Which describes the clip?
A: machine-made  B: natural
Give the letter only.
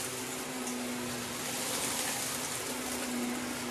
B